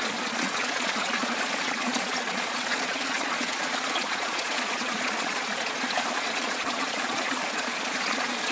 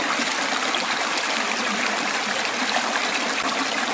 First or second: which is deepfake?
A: first